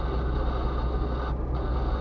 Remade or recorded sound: recorded